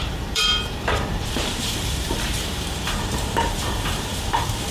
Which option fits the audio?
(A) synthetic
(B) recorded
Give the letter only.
A